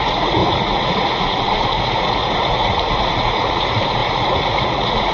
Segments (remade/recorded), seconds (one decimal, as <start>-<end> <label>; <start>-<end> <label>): 0.0-5.1 remade